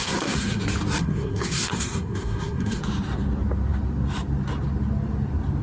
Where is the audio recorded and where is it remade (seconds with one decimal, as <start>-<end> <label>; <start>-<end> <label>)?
0.0-0.6 remade; 0.6-1.0 recorded; 1.0-2.8 remade; 2.8-5.6 recorded